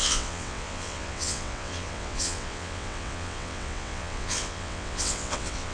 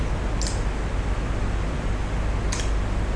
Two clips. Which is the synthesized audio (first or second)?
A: first